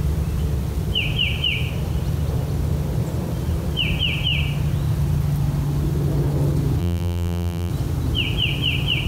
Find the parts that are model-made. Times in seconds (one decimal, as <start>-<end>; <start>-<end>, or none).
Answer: 6.8-7.7